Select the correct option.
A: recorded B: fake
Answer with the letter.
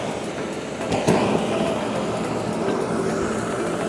A